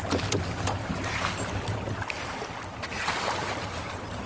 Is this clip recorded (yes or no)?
yes